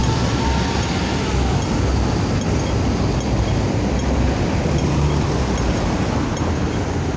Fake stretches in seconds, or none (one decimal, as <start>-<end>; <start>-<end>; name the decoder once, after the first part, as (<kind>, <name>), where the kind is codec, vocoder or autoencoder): none